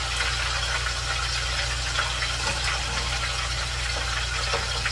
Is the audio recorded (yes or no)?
yes